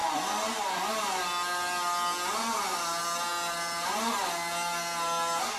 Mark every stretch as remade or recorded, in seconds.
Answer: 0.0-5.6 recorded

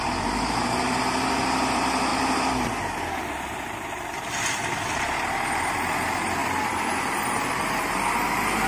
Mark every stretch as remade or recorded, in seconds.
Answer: 0.0-8.7 recorded

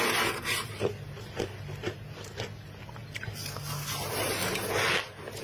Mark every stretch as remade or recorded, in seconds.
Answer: 0.0-5.4 recorded

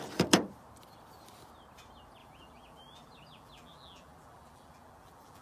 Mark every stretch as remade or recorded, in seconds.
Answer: 0.0-2.2 recorded; 2.2-5.4 remade